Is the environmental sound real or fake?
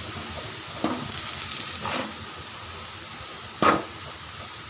real